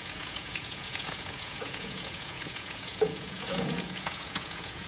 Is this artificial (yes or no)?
yes